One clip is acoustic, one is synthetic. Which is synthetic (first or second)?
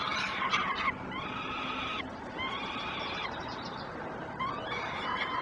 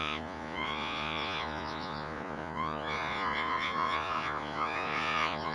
second